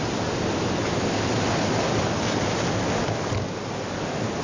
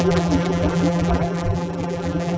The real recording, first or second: first